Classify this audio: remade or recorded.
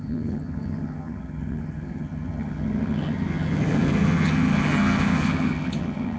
remade